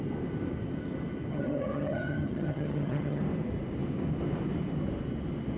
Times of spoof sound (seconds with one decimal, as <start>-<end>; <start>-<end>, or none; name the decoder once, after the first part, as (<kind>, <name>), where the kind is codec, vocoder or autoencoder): 1.3-3.2 (vocoder, HiFi-GAN)